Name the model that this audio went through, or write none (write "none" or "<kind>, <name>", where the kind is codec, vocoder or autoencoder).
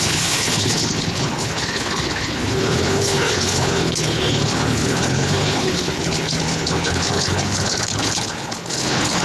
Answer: codec, HILCodec